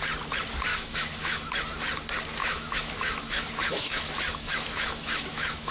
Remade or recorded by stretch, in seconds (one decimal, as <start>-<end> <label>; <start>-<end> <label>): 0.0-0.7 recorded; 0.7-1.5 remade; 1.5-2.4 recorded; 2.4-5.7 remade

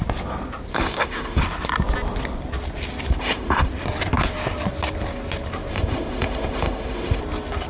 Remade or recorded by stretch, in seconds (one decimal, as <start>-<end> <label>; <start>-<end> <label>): 0.0-0.7 recorded; 0.7-1.4 remade; 1.4-3.2 recorded; 3.2-3.7 remade; 3.7-5.7 recorded; 5.7-7.2 remade; 7.2-7.7 recorded

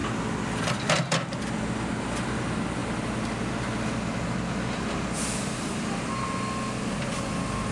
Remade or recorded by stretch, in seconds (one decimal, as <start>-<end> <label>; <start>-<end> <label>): 0.0-7.7 recorded

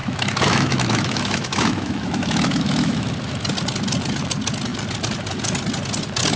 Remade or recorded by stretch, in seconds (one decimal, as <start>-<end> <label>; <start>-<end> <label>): 0.0-3.1 remade; 3.1-6.4 recorded